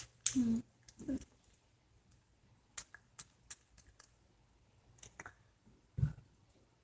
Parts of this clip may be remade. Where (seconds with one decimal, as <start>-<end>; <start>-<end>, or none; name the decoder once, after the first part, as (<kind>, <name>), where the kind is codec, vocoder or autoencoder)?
none